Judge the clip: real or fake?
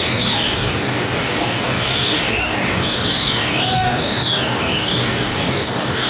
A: fake